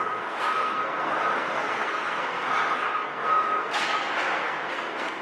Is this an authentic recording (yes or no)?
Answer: no